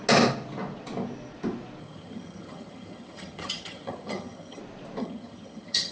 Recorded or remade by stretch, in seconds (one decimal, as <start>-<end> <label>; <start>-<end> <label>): 0.0-1.8 recorded; 1.8-4.6 remade; 4.6-5.0 recorded; 5.0-5.9 remade